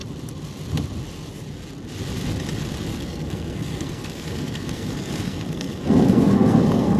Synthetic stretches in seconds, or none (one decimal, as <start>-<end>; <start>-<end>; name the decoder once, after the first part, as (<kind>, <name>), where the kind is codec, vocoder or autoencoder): 2.9-7.0 (codec, SNAC)